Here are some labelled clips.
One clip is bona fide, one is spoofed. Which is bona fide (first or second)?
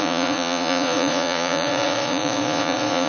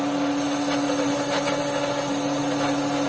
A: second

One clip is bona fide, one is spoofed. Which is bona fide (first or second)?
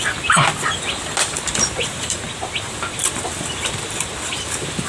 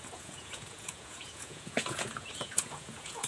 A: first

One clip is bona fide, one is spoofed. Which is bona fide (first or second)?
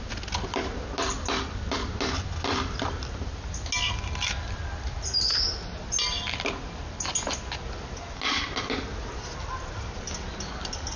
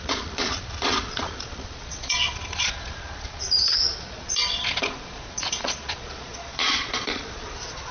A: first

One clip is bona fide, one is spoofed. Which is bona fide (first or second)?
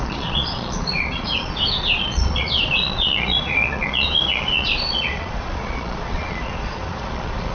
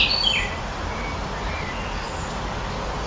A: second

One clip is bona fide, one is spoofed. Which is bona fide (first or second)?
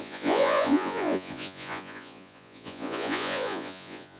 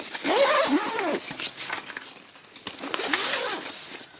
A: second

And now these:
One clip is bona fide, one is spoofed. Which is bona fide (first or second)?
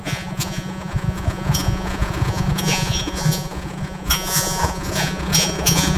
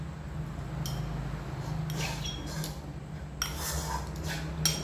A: second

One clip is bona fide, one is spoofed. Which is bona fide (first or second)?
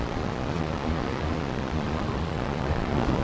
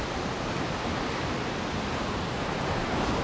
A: second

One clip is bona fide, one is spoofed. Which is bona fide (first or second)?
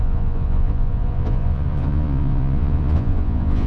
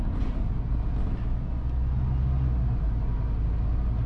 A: second